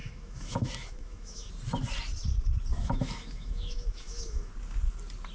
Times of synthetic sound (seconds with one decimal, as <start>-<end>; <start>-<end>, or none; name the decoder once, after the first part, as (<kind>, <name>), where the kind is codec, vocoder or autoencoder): 0.0-1.5 (autoencoder, DAC-VAE); 2.7-4.5